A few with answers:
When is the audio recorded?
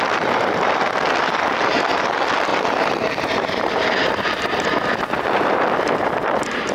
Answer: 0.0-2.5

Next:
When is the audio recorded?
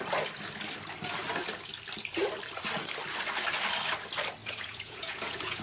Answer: 0.0-4.4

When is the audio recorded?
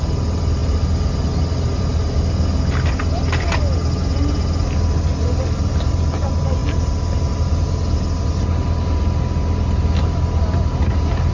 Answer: 0.0-11.3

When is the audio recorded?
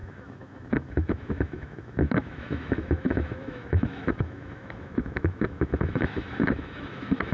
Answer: none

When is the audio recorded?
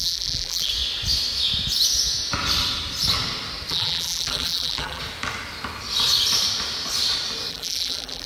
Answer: 0.7-3.7; 5.0-7.5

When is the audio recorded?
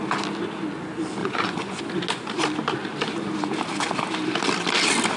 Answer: 0.0-1.2; 1.8-5.2